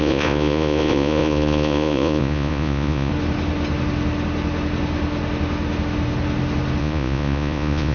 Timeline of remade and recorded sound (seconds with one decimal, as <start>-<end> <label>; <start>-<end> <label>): 0.0-3.1 remade; 3.1-6.8 recorded; 6.8-7.9 remade